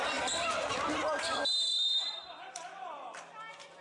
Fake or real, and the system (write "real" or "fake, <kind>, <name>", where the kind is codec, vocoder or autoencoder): fake, vocoder, BigVGAN v2